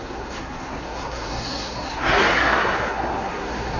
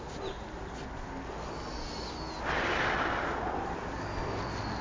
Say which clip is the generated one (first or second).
first